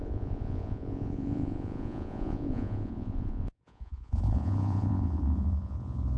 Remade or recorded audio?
remade